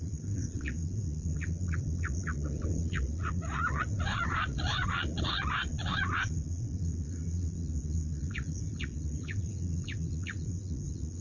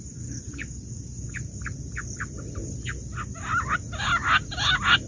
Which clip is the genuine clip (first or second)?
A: second